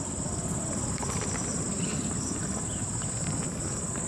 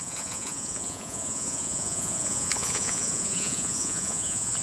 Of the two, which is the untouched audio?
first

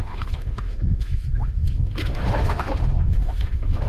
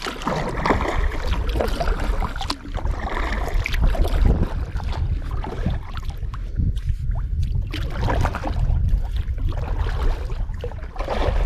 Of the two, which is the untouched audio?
second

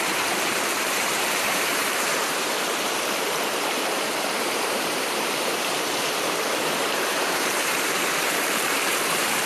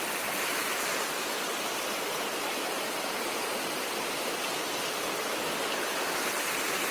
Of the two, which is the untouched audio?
second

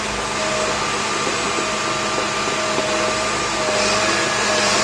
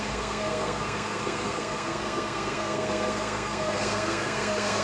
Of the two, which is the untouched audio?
first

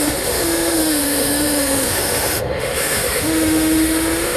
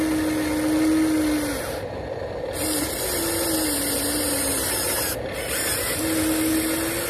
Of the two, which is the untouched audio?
second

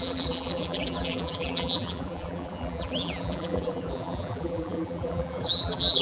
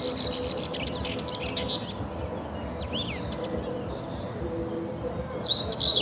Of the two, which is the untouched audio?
second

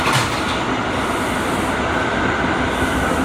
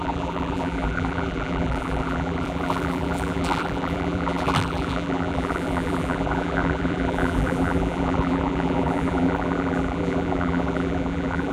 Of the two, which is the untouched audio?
first